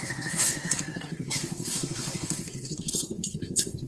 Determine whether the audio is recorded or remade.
remade